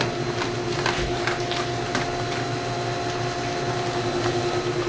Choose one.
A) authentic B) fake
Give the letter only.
A